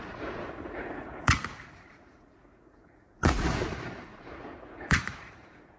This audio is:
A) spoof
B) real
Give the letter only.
A